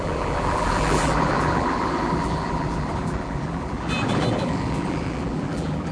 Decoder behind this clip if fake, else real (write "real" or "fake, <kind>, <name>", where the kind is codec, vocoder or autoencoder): fake, vocoder, BigVGAN v2